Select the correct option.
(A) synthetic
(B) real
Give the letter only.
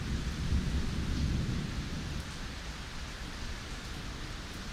B